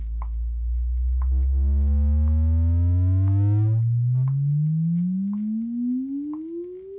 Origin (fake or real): real